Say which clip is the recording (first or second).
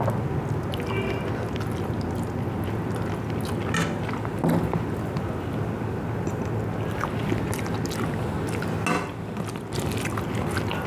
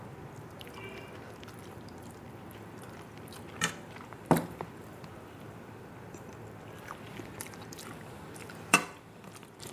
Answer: first